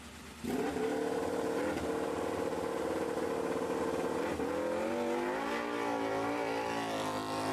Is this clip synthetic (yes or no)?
no